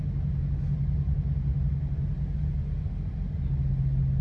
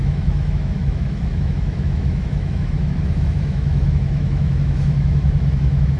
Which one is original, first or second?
first